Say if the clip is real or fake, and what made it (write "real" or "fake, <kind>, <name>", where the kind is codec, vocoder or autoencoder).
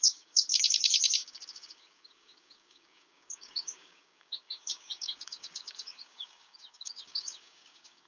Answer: fake, codec, DAC